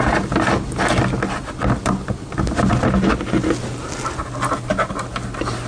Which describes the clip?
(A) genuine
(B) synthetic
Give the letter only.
A